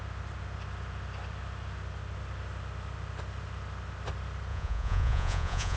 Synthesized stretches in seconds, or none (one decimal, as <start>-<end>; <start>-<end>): 4.5-5.8